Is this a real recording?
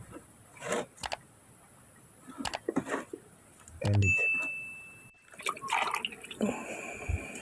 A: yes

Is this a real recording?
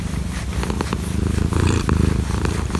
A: yes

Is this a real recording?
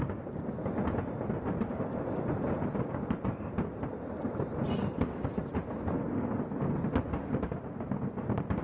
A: yes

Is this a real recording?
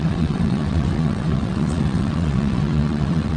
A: no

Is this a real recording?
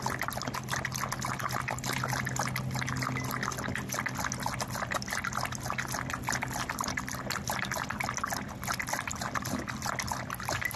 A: yes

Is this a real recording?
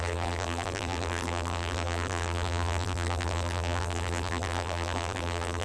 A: no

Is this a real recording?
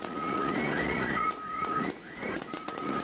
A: no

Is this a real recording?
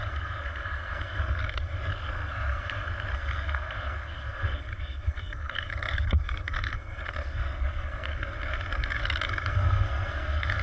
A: no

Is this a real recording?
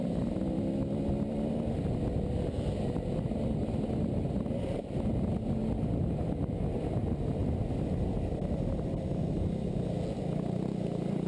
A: yes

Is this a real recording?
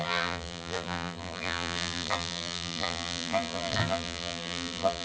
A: no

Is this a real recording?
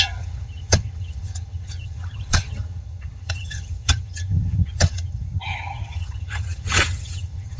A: no